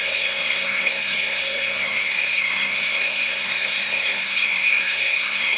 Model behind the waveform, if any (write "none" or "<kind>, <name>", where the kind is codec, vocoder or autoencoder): codec, SNAC